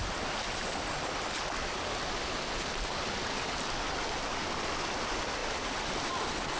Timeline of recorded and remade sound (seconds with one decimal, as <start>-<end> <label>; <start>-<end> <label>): 0.0-6.6 recorded